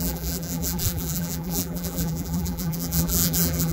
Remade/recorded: remade